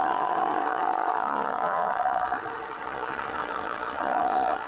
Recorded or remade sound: remade